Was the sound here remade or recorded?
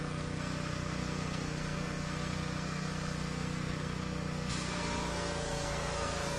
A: remade